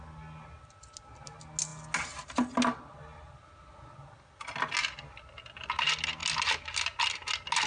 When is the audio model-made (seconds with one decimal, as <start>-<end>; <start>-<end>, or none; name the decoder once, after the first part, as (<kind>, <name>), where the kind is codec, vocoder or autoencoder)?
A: none

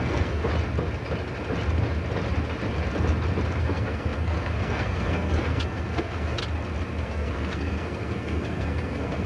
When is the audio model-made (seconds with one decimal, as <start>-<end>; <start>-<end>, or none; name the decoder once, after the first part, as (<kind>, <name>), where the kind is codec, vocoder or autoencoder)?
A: 0.0-0.5 (codec, SNAC); 3.6-6.4; 7.0-9.3

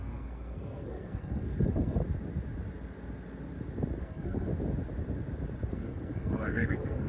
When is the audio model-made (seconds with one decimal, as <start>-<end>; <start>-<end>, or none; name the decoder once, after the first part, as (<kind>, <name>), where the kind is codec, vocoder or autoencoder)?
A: 0.0-2.0 (codec, SNAC); 4.0-4.5; 5.7-7.1

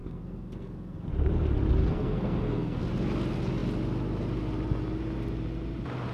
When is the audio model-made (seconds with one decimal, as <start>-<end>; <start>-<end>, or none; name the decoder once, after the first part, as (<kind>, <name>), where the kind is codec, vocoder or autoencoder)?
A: 0.0-1.1 (codec, SNAC); 1.8-2.8

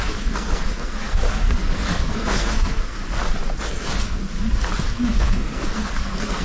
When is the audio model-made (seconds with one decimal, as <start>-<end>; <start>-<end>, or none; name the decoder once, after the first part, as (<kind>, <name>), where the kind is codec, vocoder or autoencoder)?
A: 0.0-3.0 (codec, SNAC); 3.6-4.2; 4.9-6.4

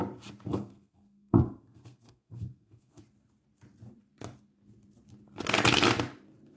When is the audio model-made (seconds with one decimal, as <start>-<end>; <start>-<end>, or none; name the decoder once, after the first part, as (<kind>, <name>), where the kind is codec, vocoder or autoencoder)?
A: 0.5-3.0 (codec, SNAC)

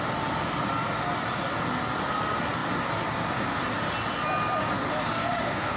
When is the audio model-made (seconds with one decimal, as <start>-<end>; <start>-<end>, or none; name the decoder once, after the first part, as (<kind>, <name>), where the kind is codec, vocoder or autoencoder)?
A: 5.2-5.8 (codec, SNAC)

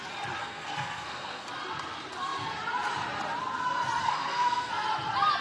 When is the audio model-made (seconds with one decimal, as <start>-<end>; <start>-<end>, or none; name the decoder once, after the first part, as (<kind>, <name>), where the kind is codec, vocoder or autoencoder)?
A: 0.4-1.5 (codec, SNAC); 4.0-4.7